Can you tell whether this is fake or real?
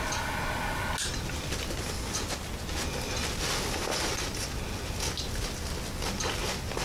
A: real